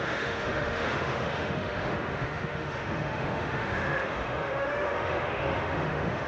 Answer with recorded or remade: remade